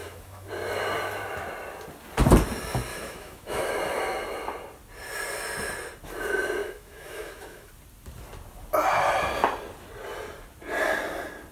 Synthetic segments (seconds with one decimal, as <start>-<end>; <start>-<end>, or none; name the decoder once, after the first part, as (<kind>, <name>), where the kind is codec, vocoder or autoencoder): 0.0-0.5 (autoencoder, DAC-VAE); 2.9-3.7; 6.6-7.7